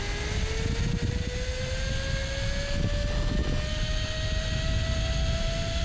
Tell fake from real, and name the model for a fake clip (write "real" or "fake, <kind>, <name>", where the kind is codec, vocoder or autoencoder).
real